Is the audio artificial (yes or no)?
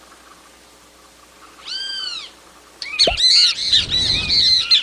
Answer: no